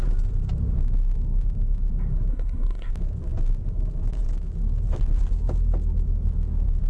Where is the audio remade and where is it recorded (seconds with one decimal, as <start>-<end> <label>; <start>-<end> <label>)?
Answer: 0.0-2.3 recorded; 2.3-2.9 remade; 2.9-6.9 recorded